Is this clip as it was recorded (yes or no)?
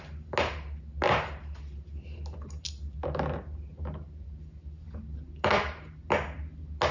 yes